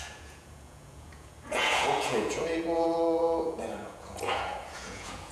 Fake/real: fake